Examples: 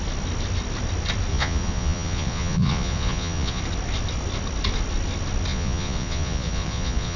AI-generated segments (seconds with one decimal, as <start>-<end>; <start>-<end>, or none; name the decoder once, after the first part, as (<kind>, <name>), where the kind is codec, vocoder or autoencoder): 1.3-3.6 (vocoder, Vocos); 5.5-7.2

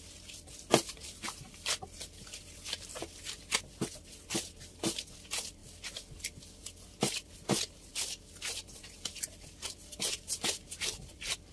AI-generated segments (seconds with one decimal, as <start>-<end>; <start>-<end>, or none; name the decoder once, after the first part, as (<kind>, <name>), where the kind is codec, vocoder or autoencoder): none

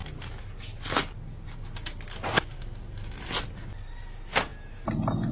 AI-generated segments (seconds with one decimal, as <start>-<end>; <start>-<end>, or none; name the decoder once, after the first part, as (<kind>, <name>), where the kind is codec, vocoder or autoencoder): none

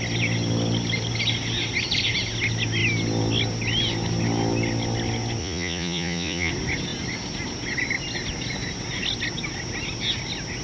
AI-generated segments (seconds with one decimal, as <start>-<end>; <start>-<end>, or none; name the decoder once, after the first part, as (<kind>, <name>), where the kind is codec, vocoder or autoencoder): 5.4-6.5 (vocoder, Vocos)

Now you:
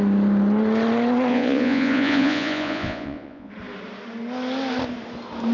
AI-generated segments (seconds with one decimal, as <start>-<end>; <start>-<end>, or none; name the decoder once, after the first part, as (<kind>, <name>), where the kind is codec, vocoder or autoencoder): 1.3-3.5 (vocoder, Vocos)

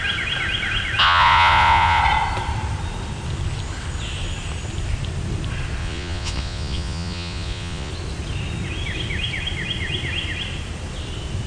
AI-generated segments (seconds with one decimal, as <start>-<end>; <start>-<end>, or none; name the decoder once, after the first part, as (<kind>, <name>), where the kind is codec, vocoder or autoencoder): 1.0-2.0 (vocoder, Vocos); 5.8-7.9